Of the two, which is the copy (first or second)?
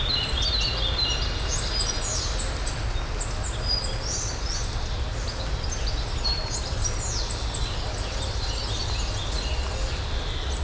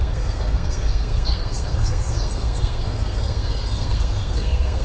second